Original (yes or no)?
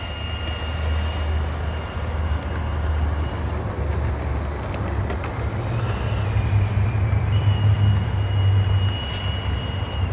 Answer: yes